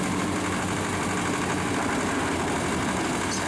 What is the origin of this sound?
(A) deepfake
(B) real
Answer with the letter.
B